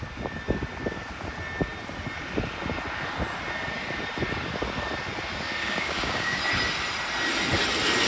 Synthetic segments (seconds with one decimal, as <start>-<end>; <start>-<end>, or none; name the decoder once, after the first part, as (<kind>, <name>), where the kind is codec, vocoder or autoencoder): 5.6-6.4 (codec, DAC)